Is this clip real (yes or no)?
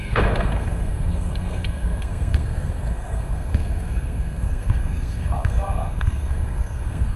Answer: no